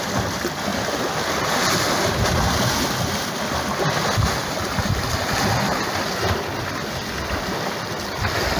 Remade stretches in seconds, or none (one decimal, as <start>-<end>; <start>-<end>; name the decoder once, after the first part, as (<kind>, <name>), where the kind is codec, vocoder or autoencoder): none